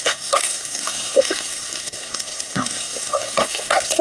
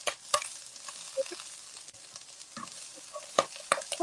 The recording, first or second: second